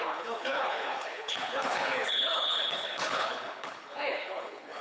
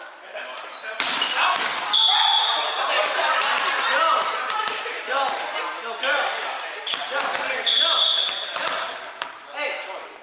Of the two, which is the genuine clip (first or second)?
second